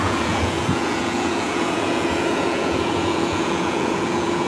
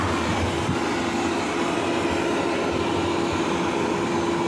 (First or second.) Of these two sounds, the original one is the second